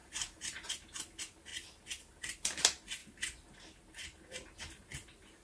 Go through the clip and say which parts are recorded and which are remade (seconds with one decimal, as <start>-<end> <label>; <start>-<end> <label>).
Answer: 0.0-0.7 remade; 0.7-5.4 recorded